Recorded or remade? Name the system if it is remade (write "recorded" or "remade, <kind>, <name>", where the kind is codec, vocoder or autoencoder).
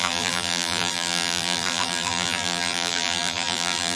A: remade, vocoder, BigVGAN v2